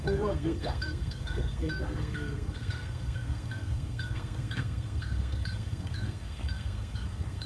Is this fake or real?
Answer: fake